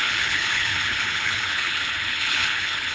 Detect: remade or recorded remade